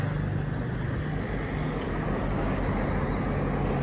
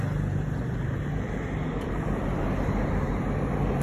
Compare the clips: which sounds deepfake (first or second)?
second